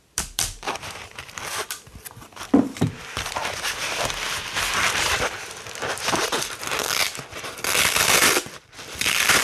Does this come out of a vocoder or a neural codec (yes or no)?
yes